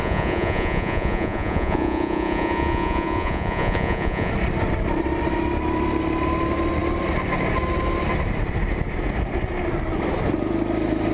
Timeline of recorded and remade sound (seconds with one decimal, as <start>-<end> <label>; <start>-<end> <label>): 0.0-4.3 remade; 4.3-11.1 recorded